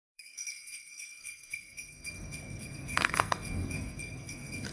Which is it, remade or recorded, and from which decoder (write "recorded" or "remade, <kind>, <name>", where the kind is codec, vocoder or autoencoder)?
remade, codec, SNAC